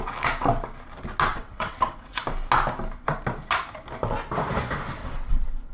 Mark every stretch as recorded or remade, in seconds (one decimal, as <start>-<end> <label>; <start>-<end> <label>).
0.0-1.3 recorded; 1.3-2.2 remade; 2.2-5.0 recorded; 5.0-5.7 remade